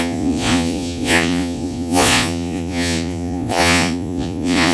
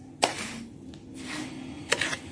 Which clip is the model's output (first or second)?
first